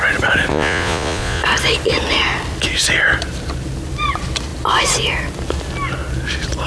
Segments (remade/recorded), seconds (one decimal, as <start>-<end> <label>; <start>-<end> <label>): 0.0-0.5 recorded; 0.5-1.4 remade; 1.4-6.7 recorded